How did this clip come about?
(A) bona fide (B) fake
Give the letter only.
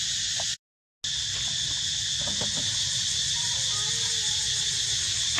A